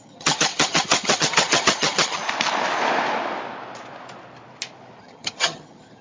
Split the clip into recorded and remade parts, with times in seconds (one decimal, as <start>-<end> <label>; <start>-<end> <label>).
0.0-2.2 remade; 2.2-5.0 recorded; 5.0-6.0 remade